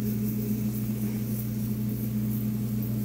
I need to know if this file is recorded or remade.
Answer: recorded